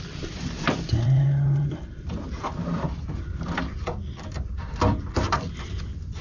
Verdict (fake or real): fake